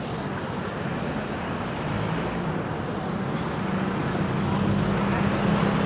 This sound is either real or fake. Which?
real